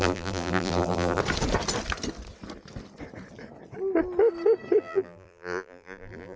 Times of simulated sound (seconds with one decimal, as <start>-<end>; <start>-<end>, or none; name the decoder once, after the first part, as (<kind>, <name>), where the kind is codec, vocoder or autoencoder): 0.0-1.2 (vocoder, BigVGAN v2); 4.8-6.4